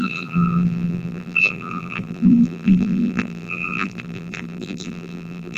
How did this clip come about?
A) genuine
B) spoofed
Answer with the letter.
B